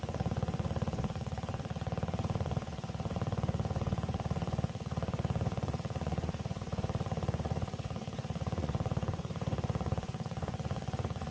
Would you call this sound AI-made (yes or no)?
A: yes